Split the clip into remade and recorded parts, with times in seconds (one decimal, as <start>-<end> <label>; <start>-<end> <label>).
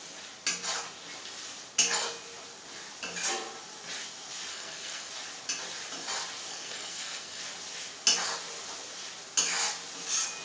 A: 0.0-4.5 recorded; 4.5-5.1 remade; 5.1-6.5 recorded; 6.5-7.4 remade; 7.4-10.4 recorded